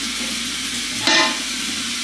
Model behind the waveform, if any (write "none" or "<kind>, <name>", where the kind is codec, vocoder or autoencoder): none